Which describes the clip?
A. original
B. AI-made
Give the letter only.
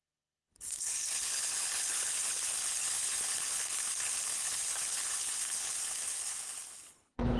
B